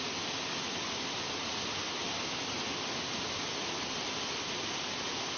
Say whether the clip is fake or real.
real